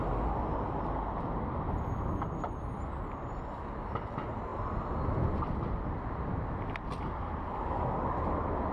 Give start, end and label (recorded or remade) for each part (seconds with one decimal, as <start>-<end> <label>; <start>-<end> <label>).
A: 0.0-8.7 recorded